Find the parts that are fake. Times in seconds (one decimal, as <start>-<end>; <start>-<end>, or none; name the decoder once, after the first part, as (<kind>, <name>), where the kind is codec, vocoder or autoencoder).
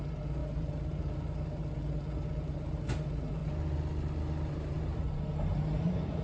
0.0-3.4 (vocoder, BigVGAN v2); 4.5-6.2